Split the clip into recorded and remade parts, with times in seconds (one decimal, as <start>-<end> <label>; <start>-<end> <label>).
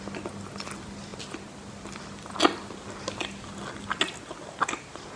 0.0-5.2 recorded